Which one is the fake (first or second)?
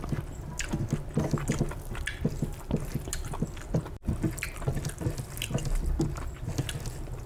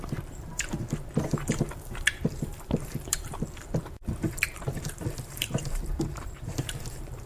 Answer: second